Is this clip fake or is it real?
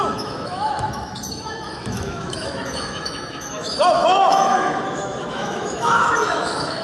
fake